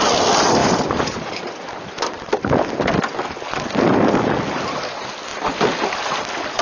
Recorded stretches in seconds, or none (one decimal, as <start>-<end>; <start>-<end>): 0.0-0.6; 2.7-6.6